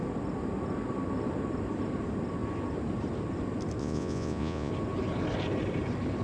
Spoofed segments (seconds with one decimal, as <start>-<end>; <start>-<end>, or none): 3.8-4.7